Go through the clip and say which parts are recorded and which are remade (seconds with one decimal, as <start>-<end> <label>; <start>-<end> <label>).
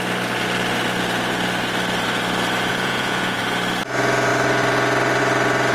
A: 0.0-2.7 recorded; 2.7-3.4 remade; 3.4-5.7 recorded